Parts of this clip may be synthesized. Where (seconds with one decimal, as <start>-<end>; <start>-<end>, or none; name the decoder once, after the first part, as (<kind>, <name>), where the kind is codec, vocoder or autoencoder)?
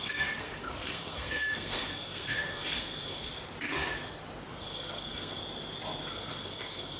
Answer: 0.0-3.3 (codec, SNAC); 4.5-5.4; 6.1-7.0